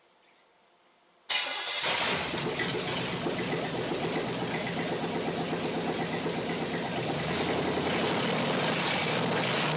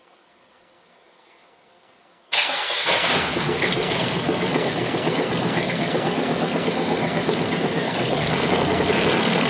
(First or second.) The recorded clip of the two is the first